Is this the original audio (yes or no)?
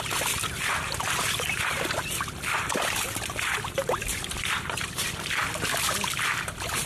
no